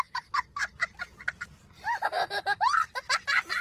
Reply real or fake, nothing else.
real